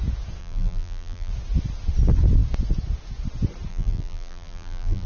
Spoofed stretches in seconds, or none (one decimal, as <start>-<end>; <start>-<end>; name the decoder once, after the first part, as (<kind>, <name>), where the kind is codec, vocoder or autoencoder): 0.4-1.3 (vocoder, BigVGAN v2); 3.7-5.1